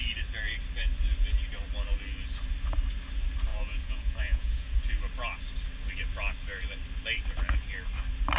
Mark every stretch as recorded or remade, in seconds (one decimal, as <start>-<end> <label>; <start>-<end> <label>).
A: 0.0-3.5 recorded; 3.5-4.8 remade; 4.8-8.4 recorded